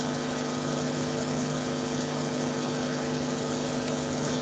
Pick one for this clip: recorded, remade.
remade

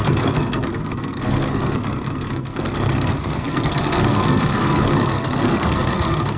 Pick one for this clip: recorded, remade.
remade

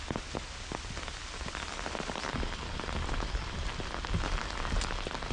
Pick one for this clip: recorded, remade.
recorded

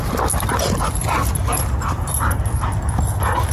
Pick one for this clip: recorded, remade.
recorded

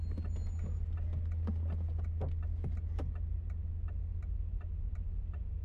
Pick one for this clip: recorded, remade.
recorded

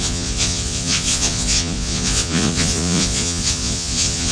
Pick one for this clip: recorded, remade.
remade